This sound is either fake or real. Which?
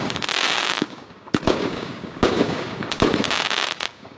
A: fake